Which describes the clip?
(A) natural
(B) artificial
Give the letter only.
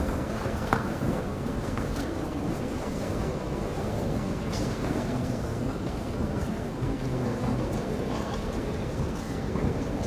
B